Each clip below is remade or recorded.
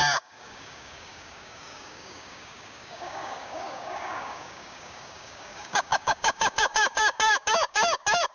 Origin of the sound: remade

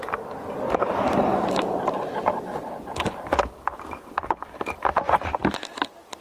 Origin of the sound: recorded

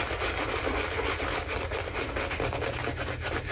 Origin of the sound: recorded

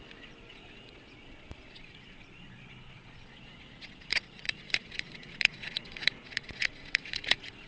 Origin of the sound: remade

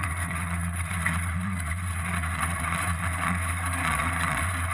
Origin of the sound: remade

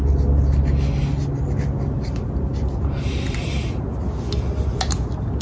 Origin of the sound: recorded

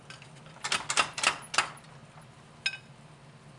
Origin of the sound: recorded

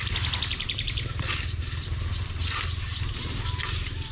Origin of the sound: recorded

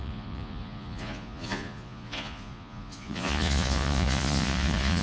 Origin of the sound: remade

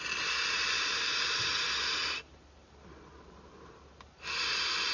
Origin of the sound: recorded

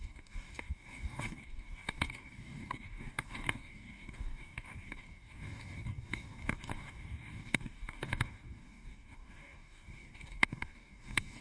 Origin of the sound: remade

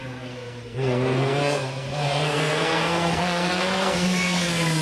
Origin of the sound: remade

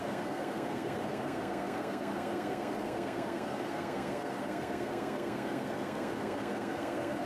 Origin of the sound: remade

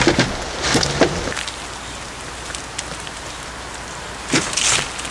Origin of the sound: recorded